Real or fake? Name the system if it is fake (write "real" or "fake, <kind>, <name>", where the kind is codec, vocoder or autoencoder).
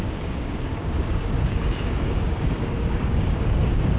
fake, codec, DAC